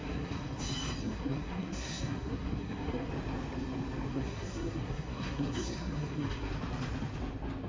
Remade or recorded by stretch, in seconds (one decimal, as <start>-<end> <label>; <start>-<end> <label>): 0.0-0.6 remade; 0.6-1.0 recorded; 1.0-3.1 remade; 3.1-4.1 recorded; 4.1-6.5 remade; 6.5-7.7 recorded